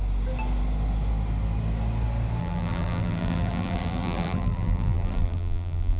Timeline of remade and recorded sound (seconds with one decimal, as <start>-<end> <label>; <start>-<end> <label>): 0.0-2.4 recorded; 2.4-6.0 remade